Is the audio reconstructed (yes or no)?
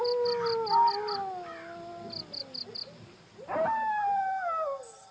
no